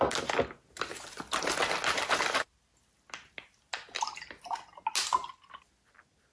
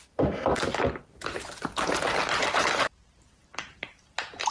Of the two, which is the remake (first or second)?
second